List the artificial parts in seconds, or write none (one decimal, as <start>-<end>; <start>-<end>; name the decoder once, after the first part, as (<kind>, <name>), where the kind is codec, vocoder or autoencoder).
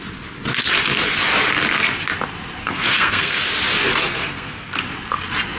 2.6-3.5 (codec, SNAC); 4.0-4.8